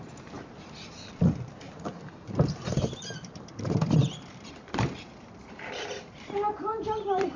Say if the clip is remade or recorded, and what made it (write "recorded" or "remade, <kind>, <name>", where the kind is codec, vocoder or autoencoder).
remade, vocoder, BigVGAN v2